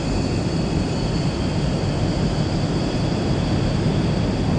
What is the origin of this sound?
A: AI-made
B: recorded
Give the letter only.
B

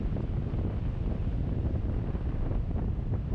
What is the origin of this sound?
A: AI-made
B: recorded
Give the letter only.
A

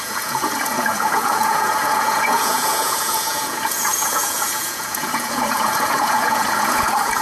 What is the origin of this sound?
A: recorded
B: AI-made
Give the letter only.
B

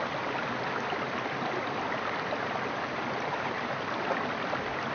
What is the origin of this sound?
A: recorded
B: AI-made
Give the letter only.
A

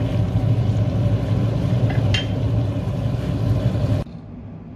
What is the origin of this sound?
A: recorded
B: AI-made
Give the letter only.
A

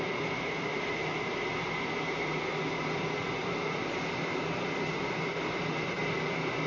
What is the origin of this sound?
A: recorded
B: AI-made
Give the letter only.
A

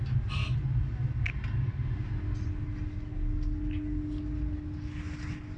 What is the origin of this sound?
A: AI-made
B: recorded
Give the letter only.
B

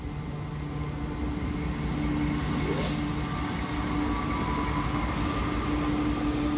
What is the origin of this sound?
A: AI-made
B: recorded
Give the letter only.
B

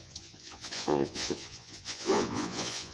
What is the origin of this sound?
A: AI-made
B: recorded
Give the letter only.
A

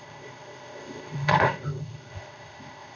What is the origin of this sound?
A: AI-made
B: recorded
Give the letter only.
A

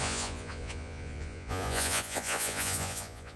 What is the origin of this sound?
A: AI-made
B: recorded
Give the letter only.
A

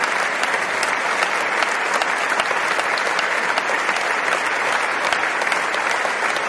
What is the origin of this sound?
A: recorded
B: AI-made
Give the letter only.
A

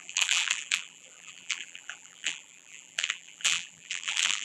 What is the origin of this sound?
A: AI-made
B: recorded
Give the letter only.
A